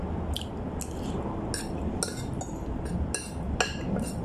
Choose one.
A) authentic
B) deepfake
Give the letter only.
A